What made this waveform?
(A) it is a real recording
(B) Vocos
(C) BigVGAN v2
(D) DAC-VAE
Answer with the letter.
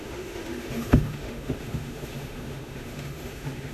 D